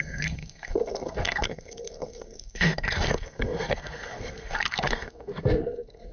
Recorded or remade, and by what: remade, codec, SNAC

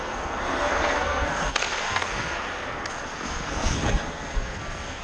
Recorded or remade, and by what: remade, codec, SNAC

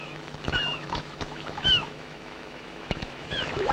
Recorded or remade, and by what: remade, autoencoder, DAC-VAE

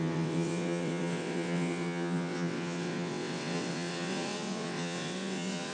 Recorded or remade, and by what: remade, vocoder, WaveNeXt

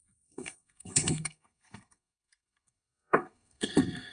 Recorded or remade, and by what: remade, codec, SNAC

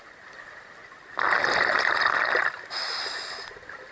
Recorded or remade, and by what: recorded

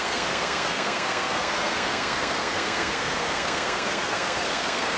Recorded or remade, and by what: remade, codec, SNAC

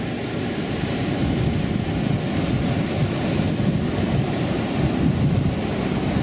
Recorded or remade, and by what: recorded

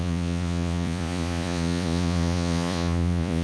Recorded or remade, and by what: remade, vocoder, Vocos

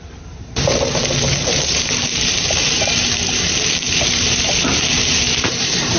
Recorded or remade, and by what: remade, vocoder, BigVGAN v2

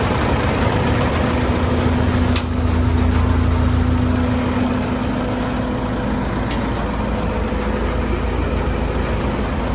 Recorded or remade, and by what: recorded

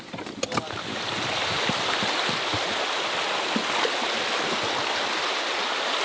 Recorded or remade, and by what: recorded